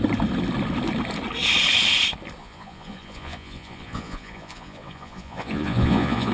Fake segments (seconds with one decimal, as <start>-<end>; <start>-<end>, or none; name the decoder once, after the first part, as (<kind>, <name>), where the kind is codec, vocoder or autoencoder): 2.4-6.3 (vocoder, Vocos)